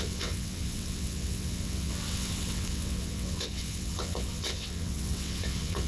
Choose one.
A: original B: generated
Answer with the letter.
B